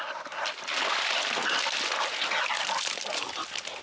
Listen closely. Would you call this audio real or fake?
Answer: real